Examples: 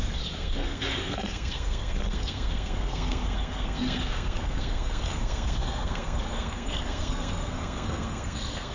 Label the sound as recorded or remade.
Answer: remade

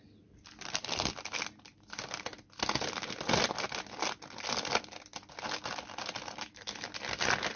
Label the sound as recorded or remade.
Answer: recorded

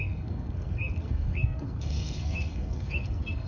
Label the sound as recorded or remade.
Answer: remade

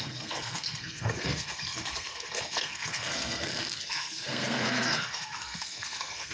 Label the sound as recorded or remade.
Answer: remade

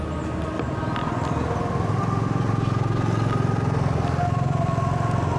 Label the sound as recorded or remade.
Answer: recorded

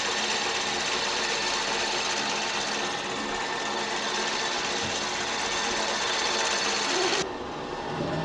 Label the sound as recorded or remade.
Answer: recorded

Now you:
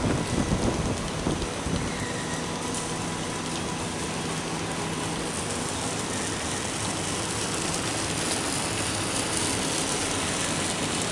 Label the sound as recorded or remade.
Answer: recorded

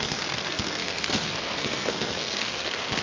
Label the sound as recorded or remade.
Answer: remade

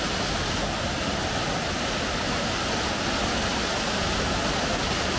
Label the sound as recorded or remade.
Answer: recorded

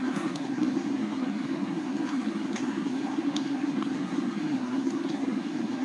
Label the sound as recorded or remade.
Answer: remade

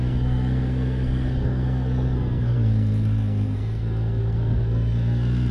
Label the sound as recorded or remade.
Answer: remade